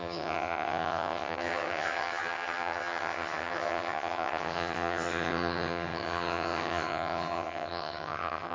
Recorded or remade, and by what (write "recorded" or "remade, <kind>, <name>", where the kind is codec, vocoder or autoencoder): remade, vocoder, HiFi-GAN